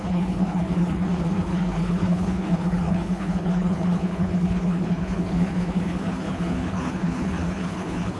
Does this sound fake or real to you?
fake